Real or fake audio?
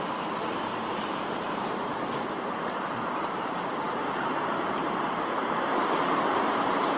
fake